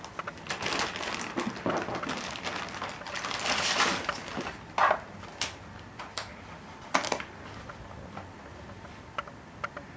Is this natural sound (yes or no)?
yes